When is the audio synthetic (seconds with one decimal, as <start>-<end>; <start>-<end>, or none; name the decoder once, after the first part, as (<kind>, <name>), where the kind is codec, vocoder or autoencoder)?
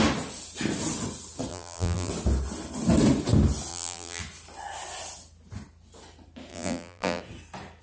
1.5-2.1 (vocoder, BigVGAN v2); 3.7-4.2; 6.5-7.2